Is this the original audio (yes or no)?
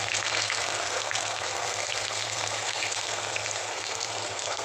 no